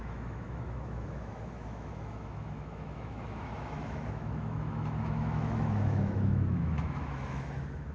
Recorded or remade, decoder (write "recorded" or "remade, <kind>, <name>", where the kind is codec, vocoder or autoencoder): remade, autoencoder, DAC-VAE